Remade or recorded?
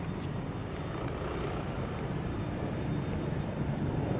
recorded